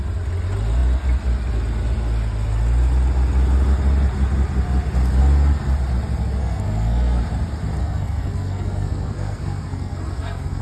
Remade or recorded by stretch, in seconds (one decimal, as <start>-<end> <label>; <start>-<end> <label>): 0.0-6.4 recorded; 6.4-7.2 remade; 7.2-7.8 recorded; 7.8-10.6 remade